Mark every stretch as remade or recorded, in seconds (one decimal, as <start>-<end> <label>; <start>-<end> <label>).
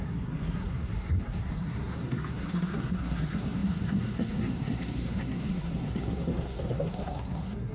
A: 0.0-7.7 remade